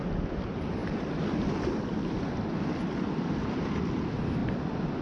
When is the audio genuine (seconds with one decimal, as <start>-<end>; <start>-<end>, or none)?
0.0-0.8; 3.8-4.4